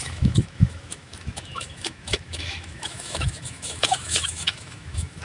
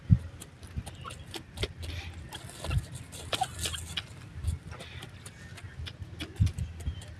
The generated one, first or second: first